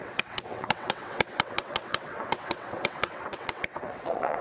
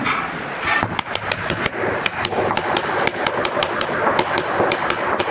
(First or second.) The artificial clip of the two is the first